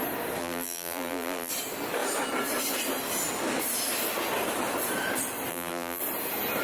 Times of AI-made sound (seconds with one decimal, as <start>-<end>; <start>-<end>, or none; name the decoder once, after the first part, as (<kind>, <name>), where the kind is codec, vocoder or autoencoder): 0.4-1.5 (vocoder, BigVGAN v2); 5.5-6.0